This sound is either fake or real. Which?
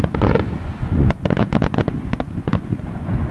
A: fake